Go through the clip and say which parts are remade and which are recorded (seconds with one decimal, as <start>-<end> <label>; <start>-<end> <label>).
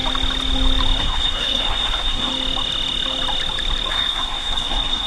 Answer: 0.0-1.0 recorded; 1.0-2.3 remade; 2.3-3.9 recorded; 3.9-5.1 remade